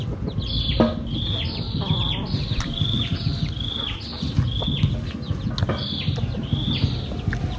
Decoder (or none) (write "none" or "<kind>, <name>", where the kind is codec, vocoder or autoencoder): none